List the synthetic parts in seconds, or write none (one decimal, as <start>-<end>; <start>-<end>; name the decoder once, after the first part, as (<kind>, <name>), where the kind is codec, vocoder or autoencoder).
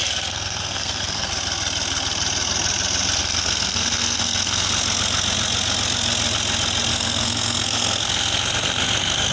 0.0-1.3 (codec, SNAC); 3.2-4.7; 6.9-9.3